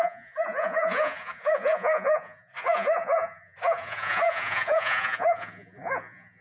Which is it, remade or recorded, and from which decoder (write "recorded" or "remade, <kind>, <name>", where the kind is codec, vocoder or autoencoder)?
remade, vocoder, Vocos